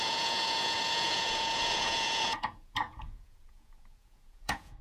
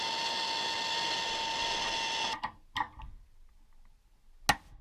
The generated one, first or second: first